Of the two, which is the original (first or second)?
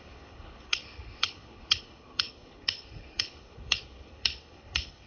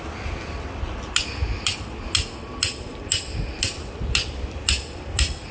second